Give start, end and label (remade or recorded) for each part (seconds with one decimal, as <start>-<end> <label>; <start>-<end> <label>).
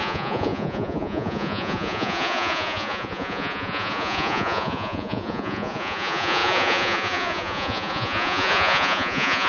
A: 0.0-9.5 remade